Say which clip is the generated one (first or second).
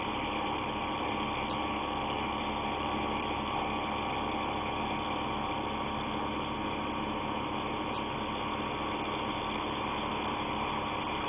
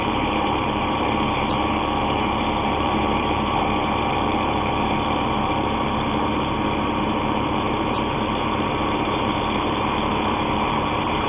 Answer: second